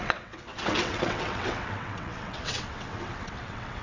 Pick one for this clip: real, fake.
fake